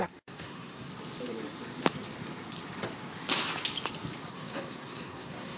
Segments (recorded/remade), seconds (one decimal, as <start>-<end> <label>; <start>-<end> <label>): 0.0-0.9 remade; 0.9-4.3 recorded; 4.3-5.6 remade